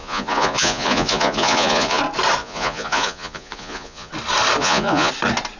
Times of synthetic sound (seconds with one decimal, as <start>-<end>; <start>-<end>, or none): 0.0-2.0; 2.4-4.1; 4.6-5.1